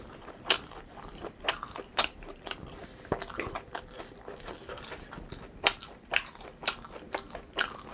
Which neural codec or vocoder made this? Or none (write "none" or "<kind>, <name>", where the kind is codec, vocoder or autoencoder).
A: vocoder, BigVGAN v2